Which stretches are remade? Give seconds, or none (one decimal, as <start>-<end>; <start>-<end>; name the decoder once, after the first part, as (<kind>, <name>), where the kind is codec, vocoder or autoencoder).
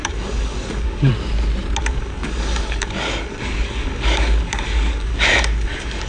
0.0-1.1 (codec, DAC); 1.8-6.1